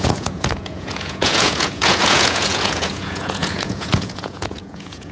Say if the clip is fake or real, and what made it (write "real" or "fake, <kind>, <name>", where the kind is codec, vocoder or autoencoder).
fake, vocoder, Vocos